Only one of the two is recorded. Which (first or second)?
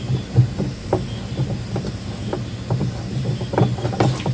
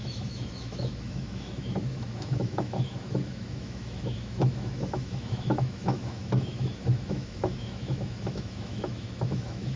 first